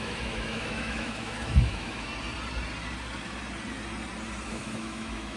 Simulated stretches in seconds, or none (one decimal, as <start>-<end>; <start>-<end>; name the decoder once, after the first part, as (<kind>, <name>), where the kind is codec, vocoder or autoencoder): 0.0-2.1 (autoencoder, DAC-VAE); 4.5-5.4